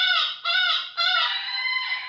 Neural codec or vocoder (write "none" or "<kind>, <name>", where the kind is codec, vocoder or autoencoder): vocoder, BigVGAN v2